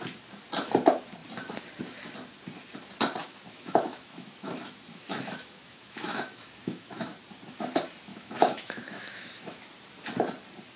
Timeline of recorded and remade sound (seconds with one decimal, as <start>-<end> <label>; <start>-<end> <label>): 0.0-3.2 recorded; 3.2-7.1 remade; 7.1-8.1 recorded; 8.1-9.6 remade; 9.6-10.8 recorded